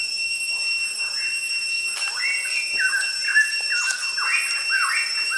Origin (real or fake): real